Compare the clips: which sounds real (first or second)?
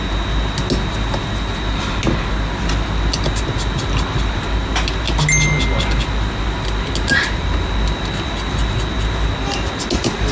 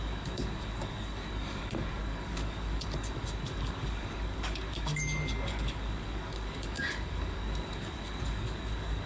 first